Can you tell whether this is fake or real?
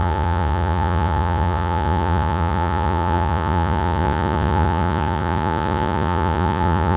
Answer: fake